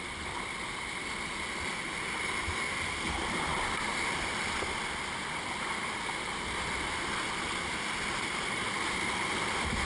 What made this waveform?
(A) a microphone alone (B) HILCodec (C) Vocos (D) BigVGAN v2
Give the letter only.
A